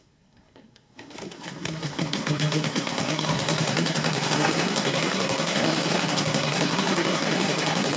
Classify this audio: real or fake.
fake